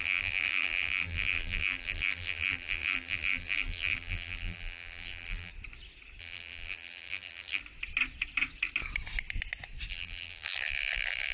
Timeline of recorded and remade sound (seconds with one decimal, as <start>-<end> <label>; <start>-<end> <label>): 0.0-5.5 remade; 5.5-6.2 recorded; 6.2-7.6 remade; 7.6-9.9 recorded; 9.9-11.3 remade